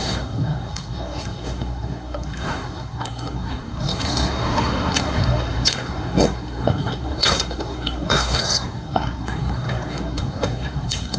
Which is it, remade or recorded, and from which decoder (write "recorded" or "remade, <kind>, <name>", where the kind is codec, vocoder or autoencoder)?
remade, codec, SNAC